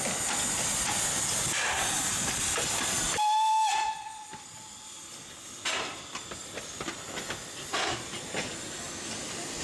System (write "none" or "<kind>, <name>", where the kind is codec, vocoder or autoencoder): none